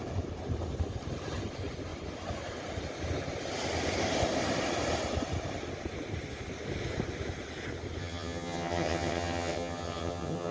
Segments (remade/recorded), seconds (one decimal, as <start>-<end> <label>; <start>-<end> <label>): 0.0-8.0 recorded; 8.0-10.5 remade